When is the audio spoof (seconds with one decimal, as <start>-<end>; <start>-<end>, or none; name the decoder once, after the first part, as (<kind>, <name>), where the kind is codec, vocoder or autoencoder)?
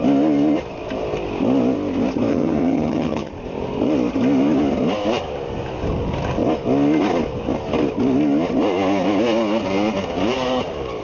2.3-3.3 (vocoder, HiFi-GAN)